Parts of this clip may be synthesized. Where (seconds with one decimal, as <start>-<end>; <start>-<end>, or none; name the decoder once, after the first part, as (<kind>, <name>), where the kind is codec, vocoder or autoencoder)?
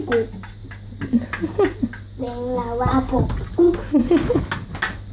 none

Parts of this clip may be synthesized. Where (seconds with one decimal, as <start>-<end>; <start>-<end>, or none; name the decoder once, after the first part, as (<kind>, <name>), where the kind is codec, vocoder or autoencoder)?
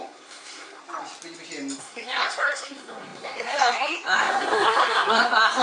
0.0-0.8 (codec, SNAC); 1.8-5.6